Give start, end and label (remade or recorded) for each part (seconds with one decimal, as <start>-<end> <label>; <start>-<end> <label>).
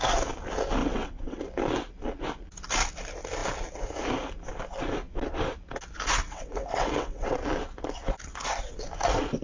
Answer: 0.0-0.8 recorded; 0.8-1.4 remade; 1.4-6.2 recorded; 6.2-7.4 remade; 7.4-9.4 recorded